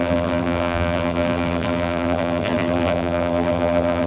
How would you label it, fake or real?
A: fake